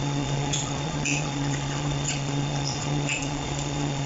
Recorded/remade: remade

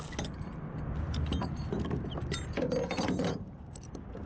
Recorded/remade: recorded